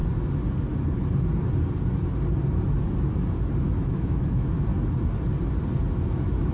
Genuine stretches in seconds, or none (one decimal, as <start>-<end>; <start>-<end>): 0.0-3.9; 4.7-5.9